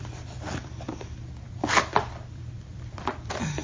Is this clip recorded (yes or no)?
no